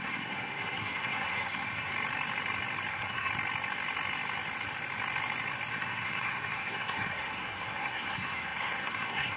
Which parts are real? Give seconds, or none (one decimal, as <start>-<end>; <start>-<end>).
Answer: 1.9-2.9; 3.3-5.7

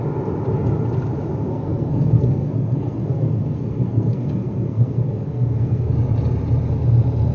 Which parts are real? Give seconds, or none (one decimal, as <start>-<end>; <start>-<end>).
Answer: 0.0-1.5; 5.9-7.3

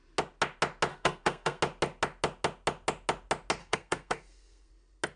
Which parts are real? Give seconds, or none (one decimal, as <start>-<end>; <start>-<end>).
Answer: 0.0-0.9; 1.6-3.6; 4.7-5.2

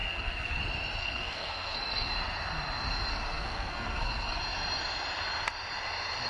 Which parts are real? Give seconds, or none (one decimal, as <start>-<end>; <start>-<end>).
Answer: 0.6-1.0; 2.1-3.1; 4.4-6.3